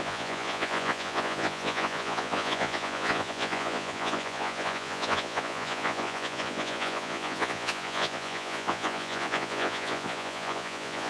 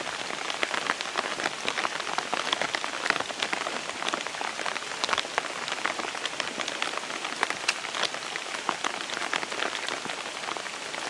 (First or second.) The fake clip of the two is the first